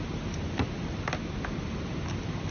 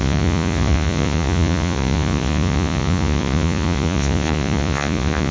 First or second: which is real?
first